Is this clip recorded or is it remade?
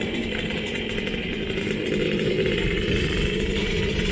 remade